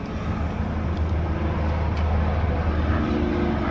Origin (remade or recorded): recorded